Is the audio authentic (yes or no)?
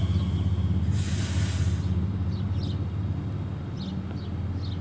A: yes